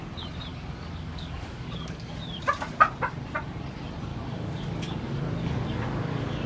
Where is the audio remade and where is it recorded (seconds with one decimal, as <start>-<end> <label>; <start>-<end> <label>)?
0.0-0.5 recorded; 0.5-2.1 remade; 2.1-4.1 recorded; 4.1-6.5 remade